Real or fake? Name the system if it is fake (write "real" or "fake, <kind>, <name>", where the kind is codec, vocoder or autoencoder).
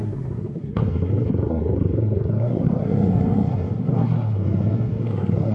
fake, codec, SNAC